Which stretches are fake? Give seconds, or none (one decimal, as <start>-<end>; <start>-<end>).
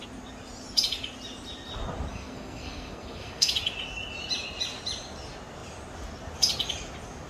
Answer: 2.1-3.5